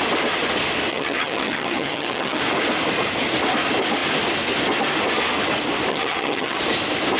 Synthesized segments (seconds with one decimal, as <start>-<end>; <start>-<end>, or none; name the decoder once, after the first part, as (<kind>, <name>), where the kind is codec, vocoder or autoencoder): 0.9-2.4 (vocoder, HiFi-GAN); 5.9-6.6